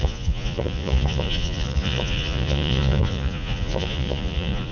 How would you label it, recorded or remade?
remade